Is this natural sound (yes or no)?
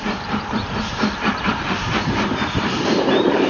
no